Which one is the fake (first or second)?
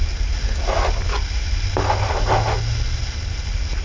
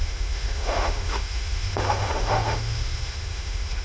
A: second